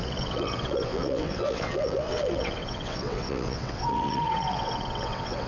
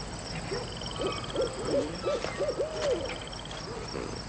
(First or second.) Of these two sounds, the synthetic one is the first